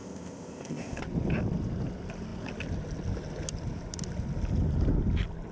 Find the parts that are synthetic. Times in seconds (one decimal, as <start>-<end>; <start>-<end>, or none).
0.0-1.0